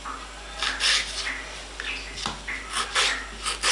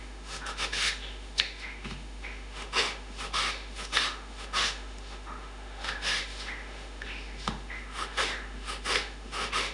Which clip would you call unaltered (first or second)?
first